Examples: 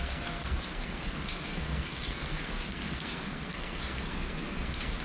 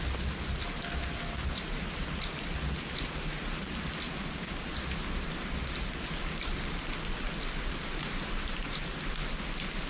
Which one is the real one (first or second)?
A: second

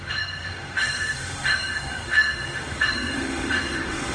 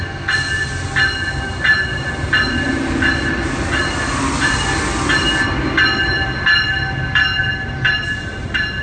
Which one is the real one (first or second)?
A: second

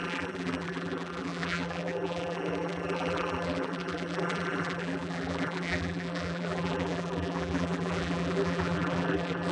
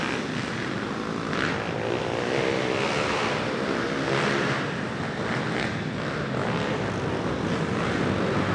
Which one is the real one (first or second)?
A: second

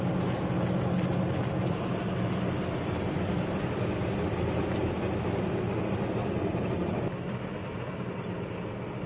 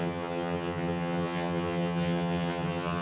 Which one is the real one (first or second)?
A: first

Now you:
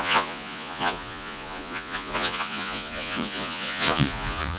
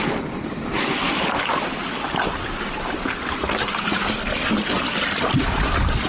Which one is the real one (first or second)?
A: second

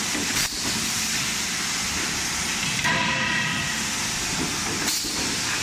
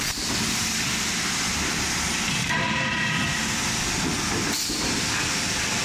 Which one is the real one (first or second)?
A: second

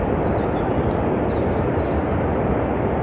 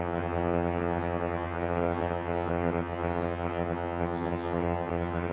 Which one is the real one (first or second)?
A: first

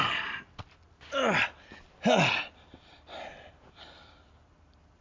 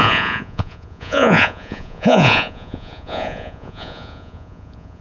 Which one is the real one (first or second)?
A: first